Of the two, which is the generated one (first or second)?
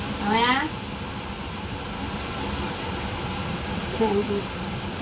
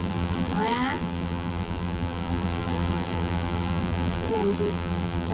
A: second